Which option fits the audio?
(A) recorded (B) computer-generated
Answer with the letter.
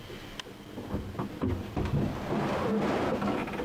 A